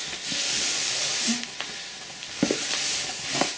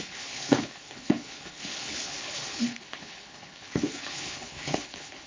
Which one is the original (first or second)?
first